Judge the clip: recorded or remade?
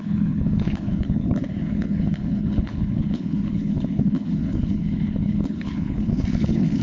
remade